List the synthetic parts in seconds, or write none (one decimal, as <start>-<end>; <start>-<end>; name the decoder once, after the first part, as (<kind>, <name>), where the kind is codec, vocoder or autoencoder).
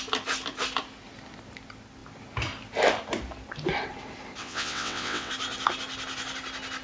4.4-5.3 (vocoder, WaveNeXt)